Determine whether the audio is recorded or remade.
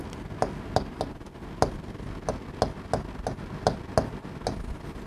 recorded